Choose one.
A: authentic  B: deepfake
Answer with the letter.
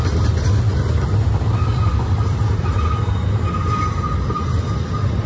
A